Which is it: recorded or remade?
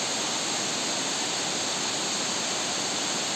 recorded